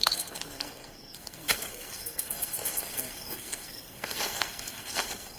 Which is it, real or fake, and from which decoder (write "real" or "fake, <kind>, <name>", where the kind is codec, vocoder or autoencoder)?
fake, codec, SNAC